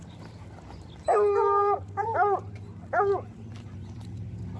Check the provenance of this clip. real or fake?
real